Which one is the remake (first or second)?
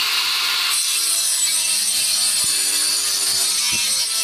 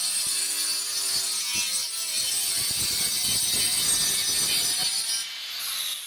first